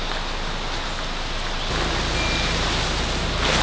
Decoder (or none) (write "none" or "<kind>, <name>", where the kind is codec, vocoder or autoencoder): none